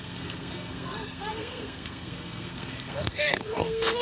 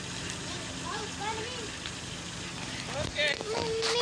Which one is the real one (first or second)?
second